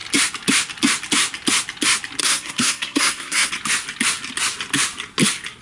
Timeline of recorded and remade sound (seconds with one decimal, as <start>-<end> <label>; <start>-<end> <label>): 0.0-2.2 recorded; 2.2-3.5 remade; 3.5-5.6 recorded